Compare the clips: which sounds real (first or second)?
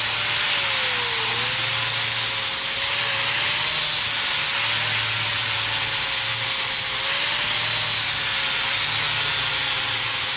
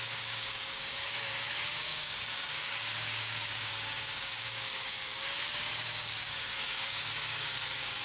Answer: first